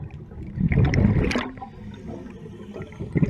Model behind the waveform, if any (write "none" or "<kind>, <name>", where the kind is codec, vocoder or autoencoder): none